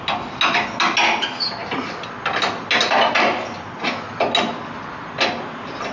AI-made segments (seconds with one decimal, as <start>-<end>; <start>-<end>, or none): none